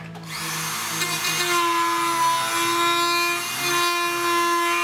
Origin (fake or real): real